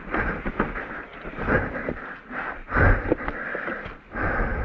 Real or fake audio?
real